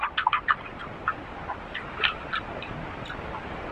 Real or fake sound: real